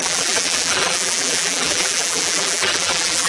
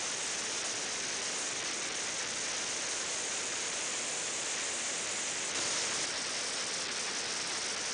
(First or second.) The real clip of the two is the second